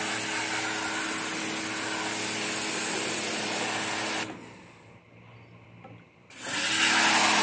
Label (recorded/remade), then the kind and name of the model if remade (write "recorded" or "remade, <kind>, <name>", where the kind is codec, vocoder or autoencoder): recorded